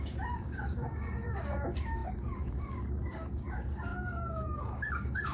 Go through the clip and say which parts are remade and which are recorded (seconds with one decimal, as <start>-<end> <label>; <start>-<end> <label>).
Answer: 0.0-5.3 remade

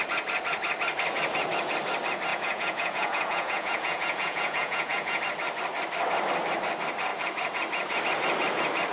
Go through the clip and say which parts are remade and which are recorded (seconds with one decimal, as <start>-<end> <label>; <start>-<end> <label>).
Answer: 0.0-2.3 recorded; 2.3-5.2 remade; 5.2-8.9 recorded

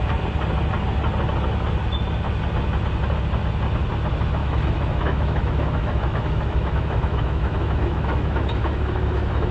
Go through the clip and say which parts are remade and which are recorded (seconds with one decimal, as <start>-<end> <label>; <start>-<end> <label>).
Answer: 0.0-4.4 recorded; 4.4-9.5 remade

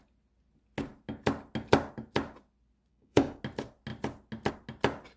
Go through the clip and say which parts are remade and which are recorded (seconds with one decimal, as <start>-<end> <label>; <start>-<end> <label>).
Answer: 0.0-2.9 recorded; 2.9-3.4 remade; 3.4-5.2 recorded

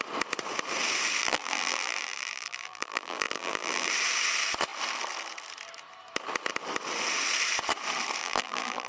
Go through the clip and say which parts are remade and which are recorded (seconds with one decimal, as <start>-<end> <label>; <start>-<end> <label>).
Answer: 0.0-1.2 recorded; 1.2-3.9 remade; 3.9-8.2 recorded; 8.2-8.9 remade